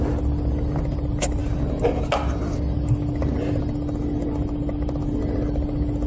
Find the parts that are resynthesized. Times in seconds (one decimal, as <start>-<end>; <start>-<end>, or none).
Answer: none